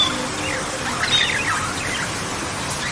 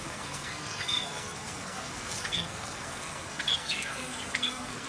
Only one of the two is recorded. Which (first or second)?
first